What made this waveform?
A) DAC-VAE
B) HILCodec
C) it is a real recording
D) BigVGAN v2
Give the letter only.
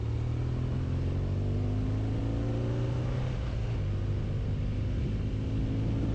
C